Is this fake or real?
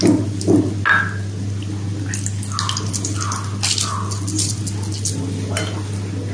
real